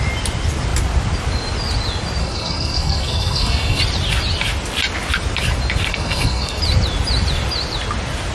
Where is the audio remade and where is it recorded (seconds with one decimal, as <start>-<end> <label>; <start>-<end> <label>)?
0.0-2.2 recorded; 2.2-3.8 remade; 3.8-5.9 recorded; 5.9-6.6 remade; 6.6-8.3 recorded